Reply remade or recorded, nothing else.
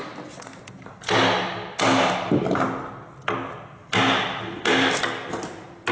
recorded